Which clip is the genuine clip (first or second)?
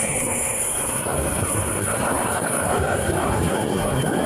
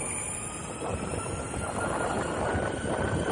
second